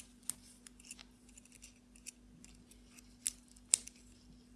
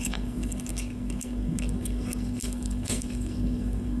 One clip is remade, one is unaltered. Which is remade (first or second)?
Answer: second